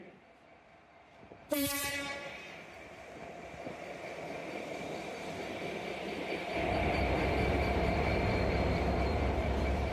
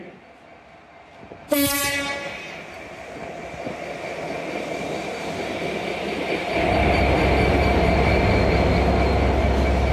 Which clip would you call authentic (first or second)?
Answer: second